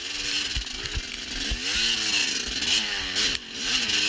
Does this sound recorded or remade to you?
recorded